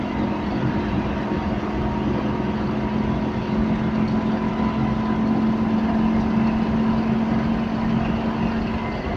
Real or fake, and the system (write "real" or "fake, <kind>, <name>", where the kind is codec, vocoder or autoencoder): real